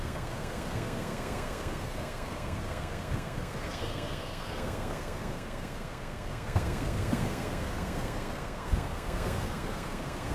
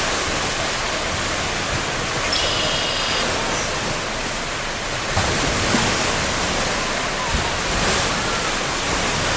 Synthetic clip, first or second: first